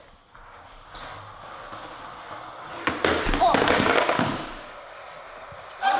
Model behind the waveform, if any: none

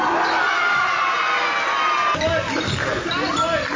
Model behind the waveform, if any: none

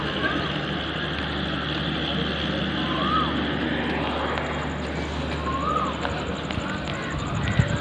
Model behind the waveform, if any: none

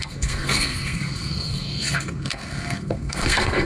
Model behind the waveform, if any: codec, SNAC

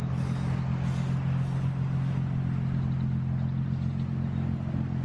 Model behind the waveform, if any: none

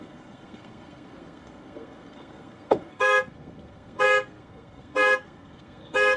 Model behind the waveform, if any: codec, SNAC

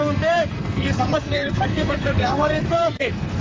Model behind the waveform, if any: codec, SNAC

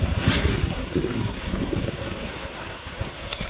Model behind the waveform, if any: codec, SNAC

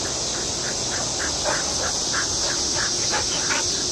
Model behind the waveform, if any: none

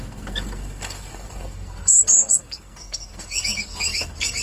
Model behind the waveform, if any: codec, SNAC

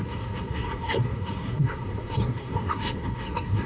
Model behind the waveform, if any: codec, SNAC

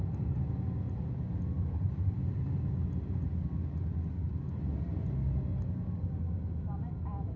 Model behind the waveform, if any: none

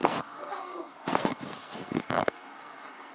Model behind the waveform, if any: codec, SNAC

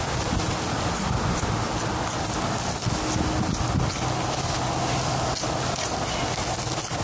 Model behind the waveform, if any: none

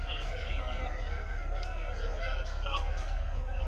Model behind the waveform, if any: codec, SNAC